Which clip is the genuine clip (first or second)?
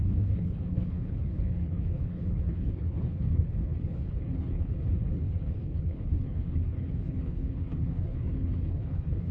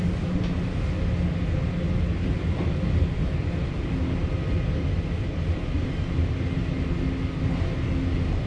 second